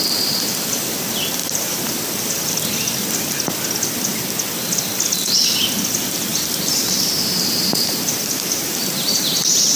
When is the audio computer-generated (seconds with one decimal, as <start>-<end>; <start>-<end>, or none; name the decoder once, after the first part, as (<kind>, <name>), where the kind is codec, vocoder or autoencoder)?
1.4-2.5 (vocoder, BigVGAN v2); 6.3-9.8